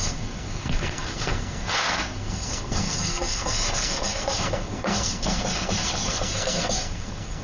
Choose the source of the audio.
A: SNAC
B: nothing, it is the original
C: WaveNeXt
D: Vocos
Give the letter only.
A